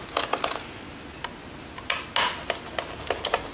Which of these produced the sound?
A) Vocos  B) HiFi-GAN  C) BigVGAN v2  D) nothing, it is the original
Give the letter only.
D